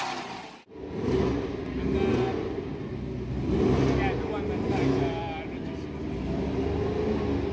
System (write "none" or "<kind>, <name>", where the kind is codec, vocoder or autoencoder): none